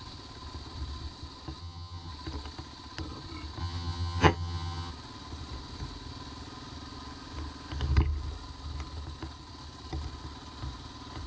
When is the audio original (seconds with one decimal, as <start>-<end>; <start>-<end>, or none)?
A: 0.0-1.6; 2.1-3.6; 4.9-11.3